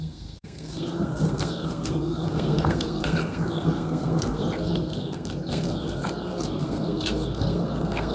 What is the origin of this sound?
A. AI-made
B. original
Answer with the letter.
A